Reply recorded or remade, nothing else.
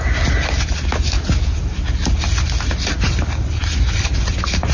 recorded